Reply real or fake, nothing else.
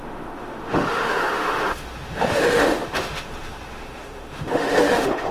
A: fake